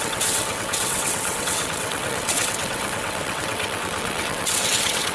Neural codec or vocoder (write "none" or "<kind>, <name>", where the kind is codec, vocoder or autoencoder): vocoder, WaveNeXt